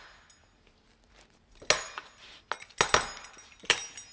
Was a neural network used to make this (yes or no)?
no